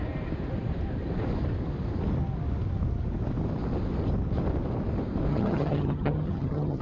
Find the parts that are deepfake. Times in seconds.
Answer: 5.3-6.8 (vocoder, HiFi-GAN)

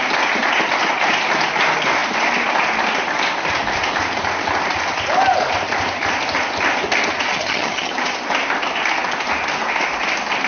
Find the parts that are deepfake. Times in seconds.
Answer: 7.3-7.9 (vocoder, HiFi-GAN)

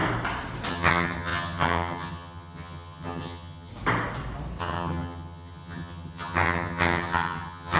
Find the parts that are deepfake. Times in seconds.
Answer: 0.7-3.7 (vocoder, HiFi-GAN); 4.6-7.8

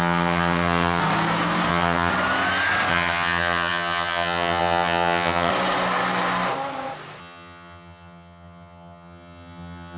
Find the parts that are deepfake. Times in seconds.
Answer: 0.0-1.0 (vocoder, HiFi-GAN); 1.7-2.1; 2.9-5.5; 7.2-10.0

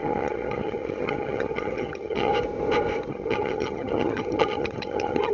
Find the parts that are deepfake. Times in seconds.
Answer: 0.0-2.3 (vocoder, HiFi-GAN); 3.1-5.3

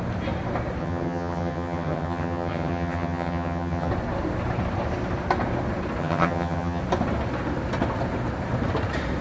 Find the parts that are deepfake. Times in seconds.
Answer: 0.8-3.9 (vocoder, HiFi-GAN); 6.0-6.8